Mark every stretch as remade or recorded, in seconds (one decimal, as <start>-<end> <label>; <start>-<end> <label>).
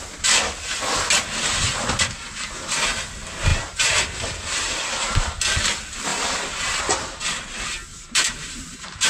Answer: 0.0-3.5 recorded; 3.5-5.4 remade; 5.4-7.9 recorded; 7.9-9.1 remade